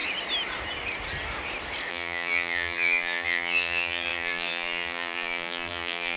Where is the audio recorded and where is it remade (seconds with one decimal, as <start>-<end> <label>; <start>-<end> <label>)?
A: 0.0-1.9 recorded; 1.9-6.2 remade